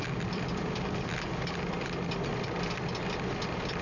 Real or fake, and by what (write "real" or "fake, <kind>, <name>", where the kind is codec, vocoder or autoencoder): real